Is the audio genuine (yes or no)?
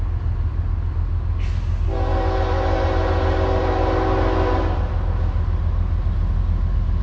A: yes